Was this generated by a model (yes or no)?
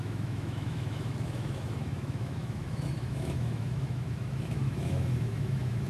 yes